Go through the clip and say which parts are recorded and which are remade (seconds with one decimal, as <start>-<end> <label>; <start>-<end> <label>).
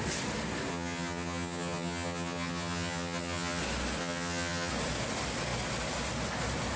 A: 0.0-0.7 recorded; 0.7-3.6 remade; 3.6-4.0 recorded; 4.0-4.7 remade; 4.7-6.8 recorded